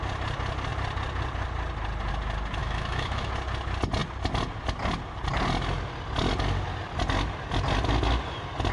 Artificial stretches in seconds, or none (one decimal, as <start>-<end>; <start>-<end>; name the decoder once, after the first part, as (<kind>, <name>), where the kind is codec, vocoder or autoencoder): 2.6-3.3 (autoencoder, DAC-VAE)